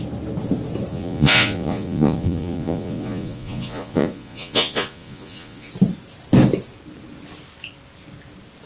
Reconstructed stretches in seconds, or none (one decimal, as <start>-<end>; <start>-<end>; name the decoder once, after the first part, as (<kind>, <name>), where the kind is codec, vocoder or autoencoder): 0.9-5.7 (vocoder, Vocos)

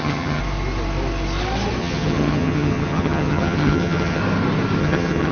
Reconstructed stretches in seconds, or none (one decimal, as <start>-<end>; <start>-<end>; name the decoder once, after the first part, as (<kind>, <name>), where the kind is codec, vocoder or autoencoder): 0.0-0.4 (vocoder, HiFi-GAN); 1.8-4.2; 4.8-5.3

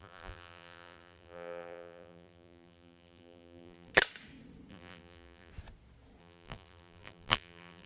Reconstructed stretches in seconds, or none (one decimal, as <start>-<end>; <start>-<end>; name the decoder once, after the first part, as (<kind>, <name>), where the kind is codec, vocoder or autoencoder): 0.0-3.9 (vocoder, BigVGAN v2); 4.7-5.5; 6.2-7.9

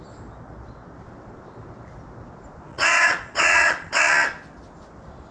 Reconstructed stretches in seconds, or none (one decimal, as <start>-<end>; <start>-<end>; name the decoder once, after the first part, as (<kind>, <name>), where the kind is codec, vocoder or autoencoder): 2.7-4.0 (vocoder, Vocos)

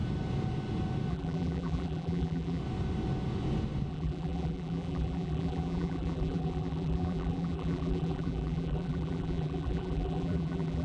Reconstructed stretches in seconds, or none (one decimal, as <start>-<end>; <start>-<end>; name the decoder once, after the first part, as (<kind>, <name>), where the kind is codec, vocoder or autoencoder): 1.1-2.6 (vocoder, BigVGAN v2); 3.9-10.8